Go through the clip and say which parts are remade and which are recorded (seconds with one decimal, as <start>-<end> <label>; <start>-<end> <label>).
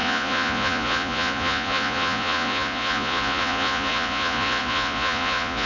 0.0-5.7 remade